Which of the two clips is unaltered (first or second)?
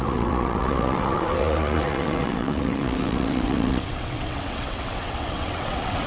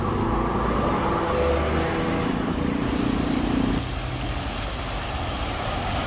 second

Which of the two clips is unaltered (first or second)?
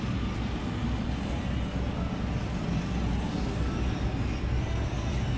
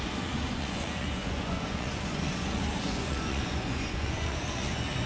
first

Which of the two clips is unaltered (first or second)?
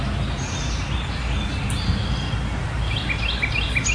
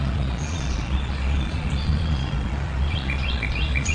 first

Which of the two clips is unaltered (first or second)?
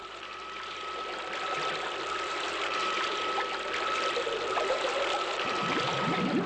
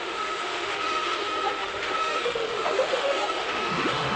first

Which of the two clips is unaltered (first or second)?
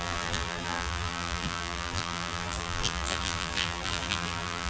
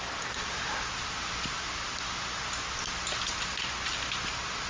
second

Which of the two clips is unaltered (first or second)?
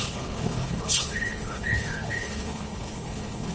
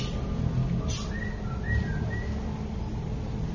second